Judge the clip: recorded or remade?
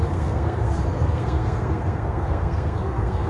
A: remade